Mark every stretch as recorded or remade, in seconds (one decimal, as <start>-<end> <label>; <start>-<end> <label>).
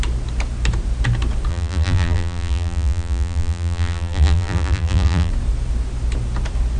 0.0-1.5 recorded; 1.5-5.3 remade; 5.3-6.8 recorded